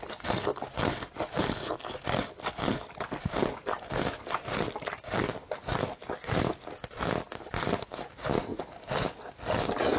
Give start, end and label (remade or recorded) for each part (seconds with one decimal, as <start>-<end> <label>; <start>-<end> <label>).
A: 0.0-10.0 recorded

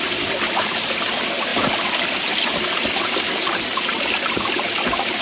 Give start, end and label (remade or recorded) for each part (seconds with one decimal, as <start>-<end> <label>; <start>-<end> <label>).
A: 0.0-5.2 recorded

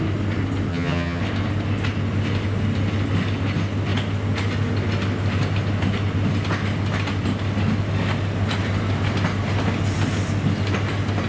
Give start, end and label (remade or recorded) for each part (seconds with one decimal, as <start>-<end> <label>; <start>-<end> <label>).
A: 0.0-0.7 recorded; 0.7-1.2 remade; 1.2-11.3 recorded

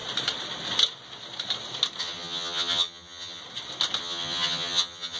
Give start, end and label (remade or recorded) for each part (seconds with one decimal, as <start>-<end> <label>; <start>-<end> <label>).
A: 0.0-2.0 recorded; 2.0-3.4 remade; 3.4-4.0 recorded; 4.0-5.2 remade

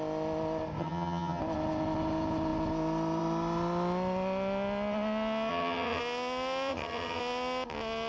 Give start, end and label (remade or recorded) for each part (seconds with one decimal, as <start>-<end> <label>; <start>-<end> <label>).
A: 0.0-0.8 recorded; 0.8-1.4 remade; 1.4-5.5 recorded; 5.5-6.0 remade; 6.0-6.7 recorded; 6.7-7.2 remade; 7.2-8.1 recorded